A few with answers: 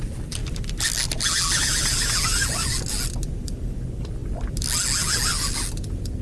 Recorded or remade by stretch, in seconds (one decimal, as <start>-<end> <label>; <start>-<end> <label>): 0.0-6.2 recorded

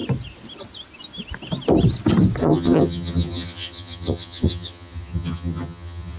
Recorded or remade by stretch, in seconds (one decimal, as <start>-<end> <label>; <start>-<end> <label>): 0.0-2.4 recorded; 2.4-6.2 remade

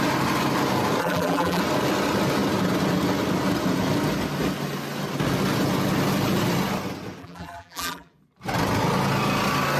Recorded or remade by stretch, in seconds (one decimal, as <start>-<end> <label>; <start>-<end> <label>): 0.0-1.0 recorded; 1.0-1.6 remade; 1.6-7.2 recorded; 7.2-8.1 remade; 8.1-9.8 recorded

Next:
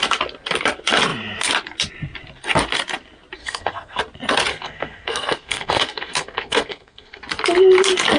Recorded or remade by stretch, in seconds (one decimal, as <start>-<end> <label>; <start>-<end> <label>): 0.0-3.4 recorded; 3.4-4.0 remade; 4.0-4.5 recorded; 4.5-7.2 remade; 7.2-8.2 recorded

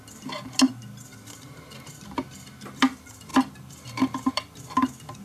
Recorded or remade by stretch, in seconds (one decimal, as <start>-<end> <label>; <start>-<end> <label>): 0.0-5.2 recorded

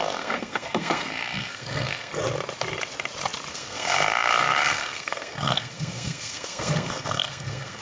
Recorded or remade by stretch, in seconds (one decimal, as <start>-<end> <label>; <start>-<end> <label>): 0.0-2.1 remade; 2.1-3.5 recorded; 3.5-7.8 remade